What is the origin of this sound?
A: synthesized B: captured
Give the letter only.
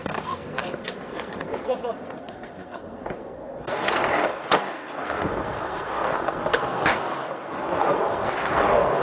A